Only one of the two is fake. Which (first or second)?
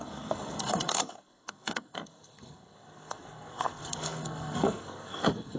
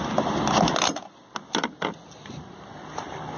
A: first